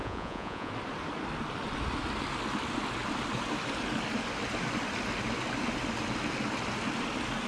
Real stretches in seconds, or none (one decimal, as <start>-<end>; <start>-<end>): 0.7-7.5